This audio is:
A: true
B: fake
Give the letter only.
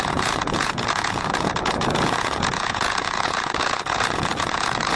B